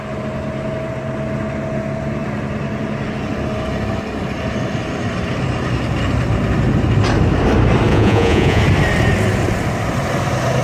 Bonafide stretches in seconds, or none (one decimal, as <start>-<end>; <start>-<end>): 0.0-7.9; 8.6-10.6